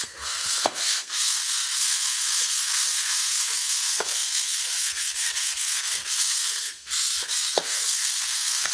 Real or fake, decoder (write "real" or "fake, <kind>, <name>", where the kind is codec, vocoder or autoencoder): fake, codec, SNAC